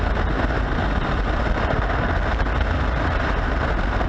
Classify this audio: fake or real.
real